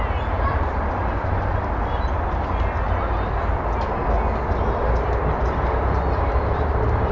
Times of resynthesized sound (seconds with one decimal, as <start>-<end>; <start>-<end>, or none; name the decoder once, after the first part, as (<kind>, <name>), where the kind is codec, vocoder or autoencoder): 0.0-1.0 (vocoder, BigVGAN v2); 4.6-7.1